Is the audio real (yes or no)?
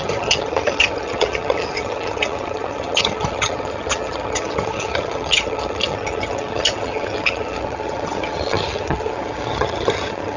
no